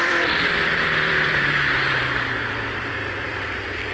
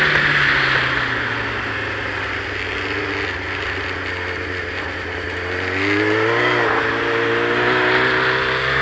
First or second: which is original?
second